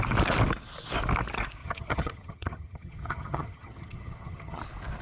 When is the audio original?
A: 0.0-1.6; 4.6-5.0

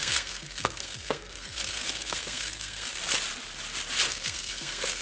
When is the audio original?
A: 3.0-4.1

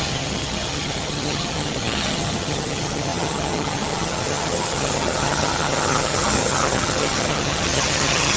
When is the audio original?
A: none

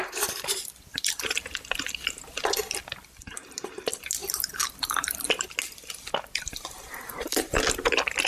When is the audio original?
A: 0.0-8.3